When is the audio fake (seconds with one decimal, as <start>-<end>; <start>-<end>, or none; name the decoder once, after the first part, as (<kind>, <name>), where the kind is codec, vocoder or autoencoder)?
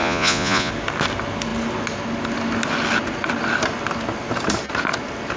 0.0-0.7 (vocoder, Vocos)